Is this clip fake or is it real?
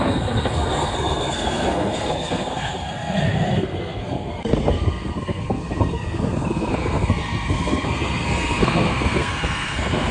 fake